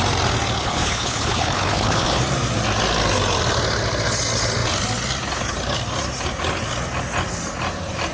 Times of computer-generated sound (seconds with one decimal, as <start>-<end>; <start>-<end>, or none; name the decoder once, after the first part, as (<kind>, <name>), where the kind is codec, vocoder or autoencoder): 0.6-2.2 (codec, HILCodec)